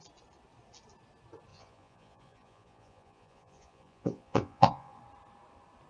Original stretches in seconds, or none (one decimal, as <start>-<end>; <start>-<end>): 0.0-1.5; 5.0-5.9